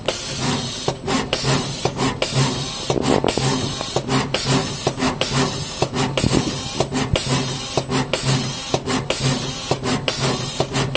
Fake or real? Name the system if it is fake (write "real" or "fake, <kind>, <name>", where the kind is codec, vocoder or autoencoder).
real